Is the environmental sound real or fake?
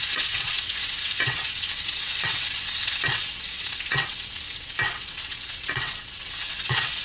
fake